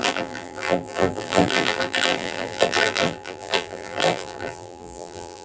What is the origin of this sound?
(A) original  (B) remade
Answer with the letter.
B